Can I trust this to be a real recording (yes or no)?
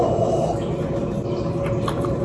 yes